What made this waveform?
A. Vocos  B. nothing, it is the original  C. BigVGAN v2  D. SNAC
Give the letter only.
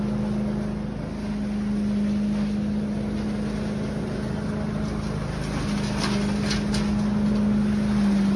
B